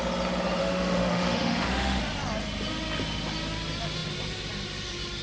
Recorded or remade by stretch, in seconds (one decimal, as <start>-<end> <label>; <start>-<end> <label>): 0.0-0.6 recorded; 0.6-2.0 remade; 2.0-5.2 recorded